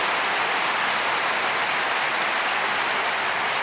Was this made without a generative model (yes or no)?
no